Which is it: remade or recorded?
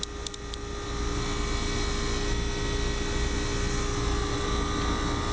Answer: recorded